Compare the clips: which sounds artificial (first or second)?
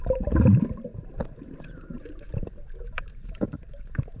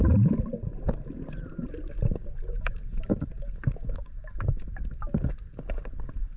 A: first